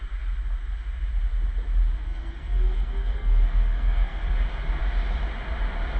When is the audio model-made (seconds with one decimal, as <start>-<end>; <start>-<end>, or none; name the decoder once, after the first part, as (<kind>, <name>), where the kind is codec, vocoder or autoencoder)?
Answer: 2.0-4.3 (codec, SNAC)